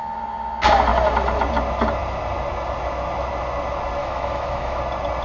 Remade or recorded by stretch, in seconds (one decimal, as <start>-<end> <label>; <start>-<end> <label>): 0.0-4.0 recorded; 4.0-4.8 remade; 4.8-5.2 recorded